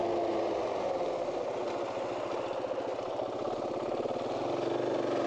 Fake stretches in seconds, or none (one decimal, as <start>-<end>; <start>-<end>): none